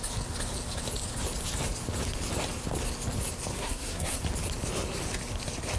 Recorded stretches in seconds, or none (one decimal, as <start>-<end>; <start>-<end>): 0.0-3.5; 4.2-5.8